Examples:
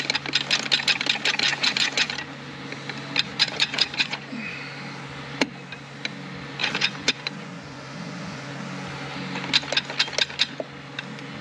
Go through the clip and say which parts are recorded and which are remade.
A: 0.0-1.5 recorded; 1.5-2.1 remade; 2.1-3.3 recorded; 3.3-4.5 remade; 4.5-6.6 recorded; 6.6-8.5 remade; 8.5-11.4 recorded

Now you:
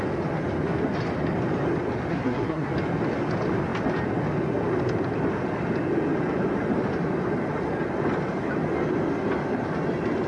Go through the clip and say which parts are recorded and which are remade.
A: 0.0-2.1 recorded; 2.1-2.7 remade; 2.7-10.3 recorded

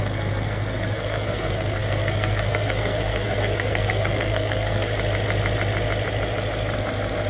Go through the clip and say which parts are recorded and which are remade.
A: 0.0-4.9 remade; 4.9-7.3 recorded

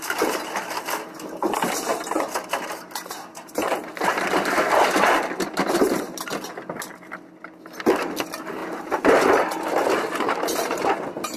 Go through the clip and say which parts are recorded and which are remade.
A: 0.0-0.7 remade; 0.7-1.9 recorded; 1.9-6.3 remade; 6.3-8.6 recorded; 8.6-9.2 remade; 9.2-11.4 recorded